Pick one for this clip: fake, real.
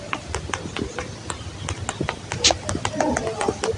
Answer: real